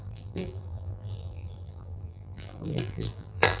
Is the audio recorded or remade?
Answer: remade